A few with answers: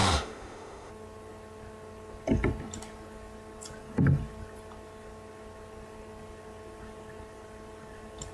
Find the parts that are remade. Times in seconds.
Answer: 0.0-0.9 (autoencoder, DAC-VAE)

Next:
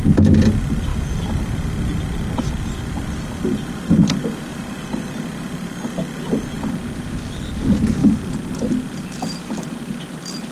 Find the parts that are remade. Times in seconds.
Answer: none

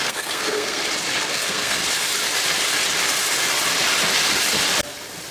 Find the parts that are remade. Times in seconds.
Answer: 0.0-0.8 (codec, SNAC); 1.3-1.8

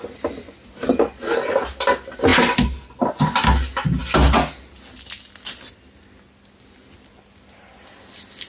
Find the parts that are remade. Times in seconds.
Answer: none

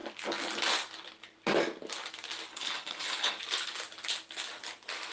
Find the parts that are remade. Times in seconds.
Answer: 2.5-3.4 (codec, HILCodec)

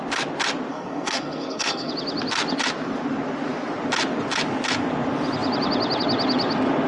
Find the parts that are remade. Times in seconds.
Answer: 0.7-1.9 (codec, SNAC)